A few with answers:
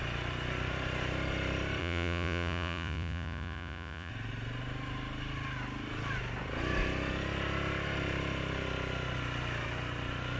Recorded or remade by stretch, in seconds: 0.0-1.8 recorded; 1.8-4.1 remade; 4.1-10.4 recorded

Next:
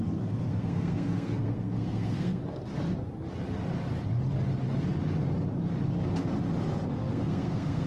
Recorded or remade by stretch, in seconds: 0.0-2.4 remade; 2.4-7.1 recorded; 7.1-7.9 remade

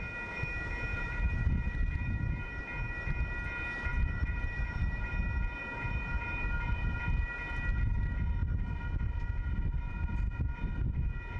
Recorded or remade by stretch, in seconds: 0.0-0.9 recorded; 0.9-2.6 remade; 2.6-3.9 recorded; 3.9-5.1 remade; 5.1-11.4 recorded

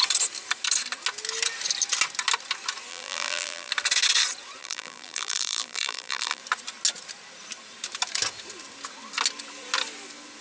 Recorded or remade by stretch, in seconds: 0.0-2.9 recorded; 2.9-3.7 remade; 3.7-4.6 recorded; 4.6-6.4 remade; 6.4-10.4 recorded

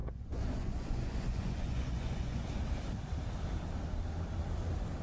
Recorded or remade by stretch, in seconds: 0.0-2.6 remade; 2.6-5.0 recorded

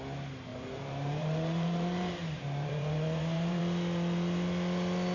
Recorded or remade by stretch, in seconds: 0.0-0.5 recorded; 0.5-3.6 remade; 3.6-5.1 recorded

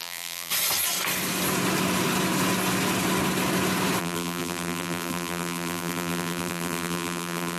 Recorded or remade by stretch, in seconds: 0.0-0.5 remade; 0.5-4.0 recorded; 4.0-7.6 remade

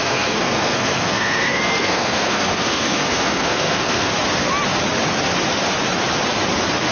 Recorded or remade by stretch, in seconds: 0.0-4.1 remade; 4.1-6.9 recorded